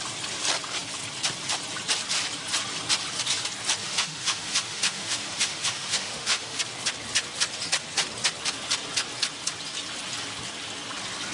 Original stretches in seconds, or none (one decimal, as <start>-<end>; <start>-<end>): 0.0-3.8; 6.6-11.3